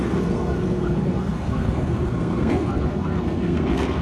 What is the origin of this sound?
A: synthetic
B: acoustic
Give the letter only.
A